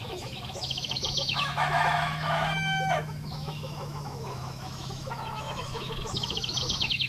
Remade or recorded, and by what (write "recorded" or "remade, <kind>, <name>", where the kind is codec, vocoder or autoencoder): remade, autoencoder, DAC-VAE